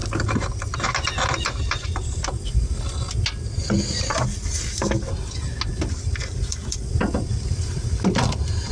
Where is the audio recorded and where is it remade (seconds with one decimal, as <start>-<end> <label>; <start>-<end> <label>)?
0.0-8.7 recorded